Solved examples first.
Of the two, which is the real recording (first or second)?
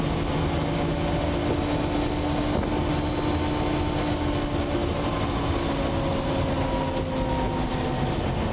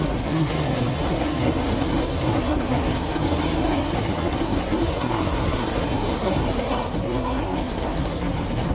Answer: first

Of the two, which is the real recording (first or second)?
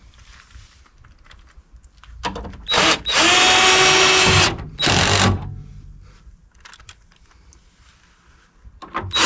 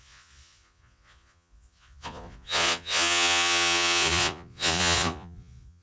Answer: first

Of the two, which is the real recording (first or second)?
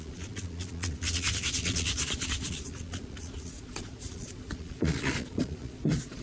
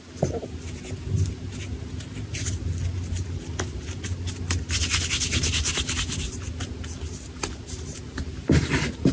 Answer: second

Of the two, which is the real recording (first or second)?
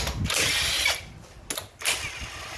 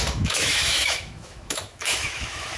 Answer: first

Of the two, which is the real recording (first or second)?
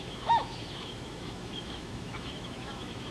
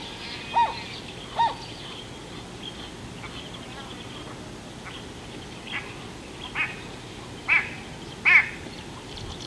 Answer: second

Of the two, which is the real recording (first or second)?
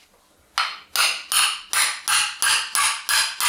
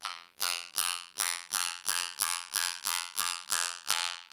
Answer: first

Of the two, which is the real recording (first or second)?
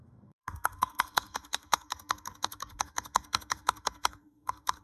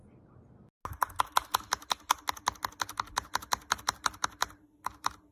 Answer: second